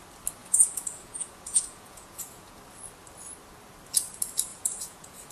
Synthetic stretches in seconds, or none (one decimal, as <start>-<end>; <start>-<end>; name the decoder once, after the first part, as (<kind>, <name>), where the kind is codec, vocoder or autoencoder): 0.4-2.6 (vocoder, Vocos); 4.5-5.3